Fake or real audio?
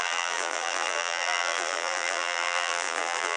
fake